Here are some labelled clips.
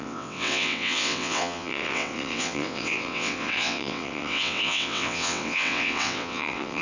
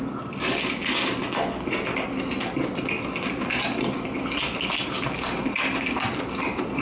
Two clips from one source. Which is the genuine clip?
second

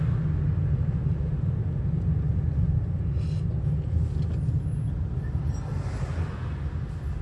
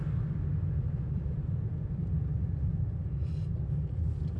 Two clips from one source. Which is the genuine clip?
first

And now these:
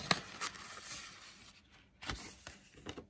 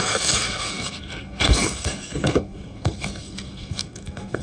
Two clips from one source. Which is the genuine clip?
first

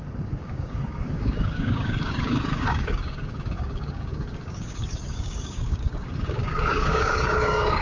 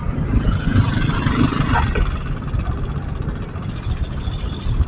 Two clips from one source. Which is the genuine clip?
second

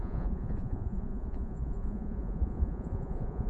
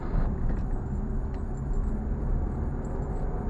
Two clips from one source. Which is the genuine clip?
second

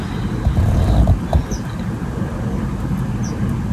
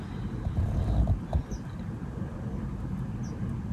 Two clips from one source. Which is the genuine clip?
first